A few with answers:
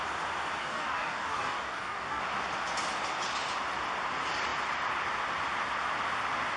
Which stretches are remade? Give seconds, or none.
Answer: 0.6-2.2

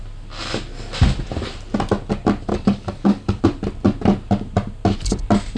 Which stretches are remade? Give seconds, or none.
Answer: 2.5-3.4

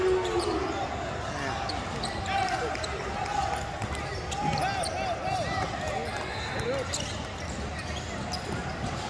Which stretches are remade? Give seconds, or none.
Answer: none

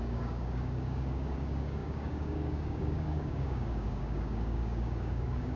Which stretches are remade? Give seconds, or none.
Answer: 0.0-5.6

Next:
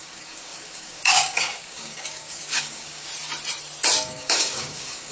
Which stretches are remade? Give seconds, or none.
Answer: 0.0-3.1; 4.0-5.1

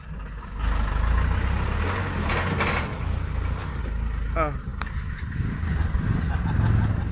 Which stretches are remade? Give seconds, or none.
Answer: 2.9-3.8

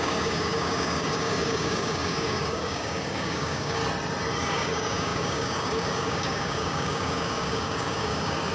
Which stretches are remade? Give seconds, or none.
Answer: 0.0-3.8; 4.5-8.5